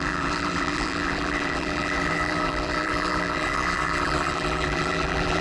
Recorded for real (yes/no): no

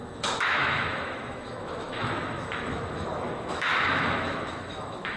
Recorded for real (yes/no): no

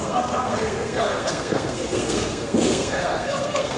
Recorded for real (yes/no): no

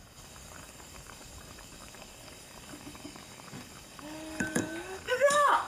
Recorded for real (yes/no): no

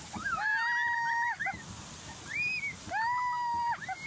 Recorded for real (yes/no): yes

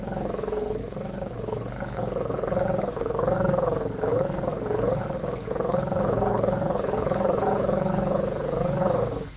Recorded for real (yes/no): no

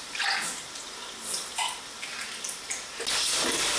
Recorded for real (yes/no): yes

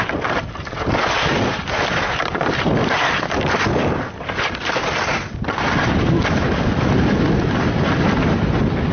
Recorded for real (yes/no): yes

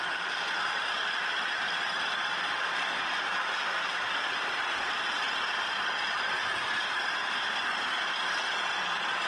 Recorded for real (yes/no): no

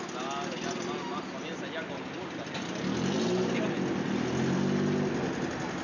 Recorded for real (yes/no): yes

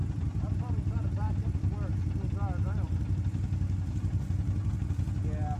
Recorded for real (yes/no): yes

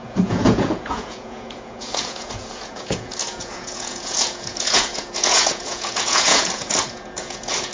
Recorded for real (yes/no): no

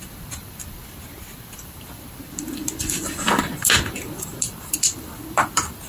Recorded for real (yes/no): no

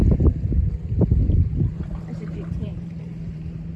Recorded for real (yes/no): no